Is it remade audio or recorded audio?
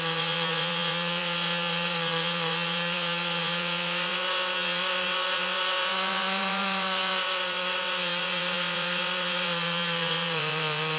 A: remade